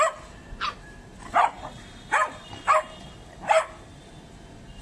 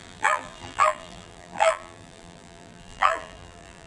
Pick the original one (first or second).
first